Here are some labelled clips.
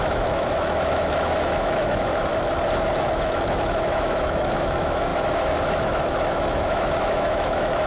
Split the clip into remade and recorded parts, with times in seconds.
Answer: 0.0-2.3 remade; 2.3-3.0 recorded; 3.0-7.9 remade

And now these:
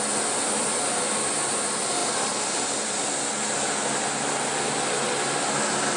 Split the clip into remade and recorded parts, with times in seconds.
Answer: 0.0-2.0 recorded; 2.0-2.9 remade; 2.9-6.0 recorded

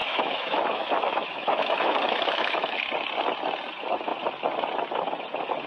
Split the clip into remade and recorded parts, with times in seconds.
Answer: 0.0-2.8 remade; 2.8-5.7 recorded

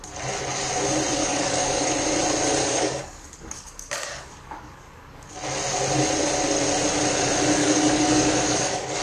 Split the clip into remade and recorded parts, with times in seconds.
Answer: 0.0-1.2 recorded; 1.2-1.9 remade; 1.9-2.6 recorded; 2.6-5.3 remade; 5.3-7.6 recorded; 7.6-9.0 remade

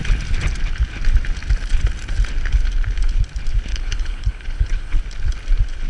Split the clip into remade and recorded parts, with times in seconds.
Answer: 0.0-3.7 recorded; 3.7-5.0 remade; 5.0-5.9 recorded

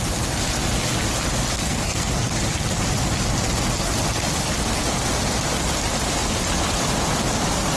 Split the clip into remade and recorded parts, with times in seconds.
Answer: 0.0-1.6 recorded; 1.6-2.3 remade; 2.3-7.8 recorded

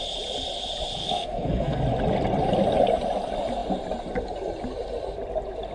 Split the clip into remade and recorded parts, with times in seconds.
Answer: 0.0-1.0 recorded; 1.0-1.8 remade; 1.8-5.7 recorded

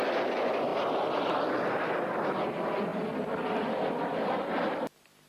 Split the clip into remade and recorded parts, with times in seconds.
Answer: 0.0-5.3 recorded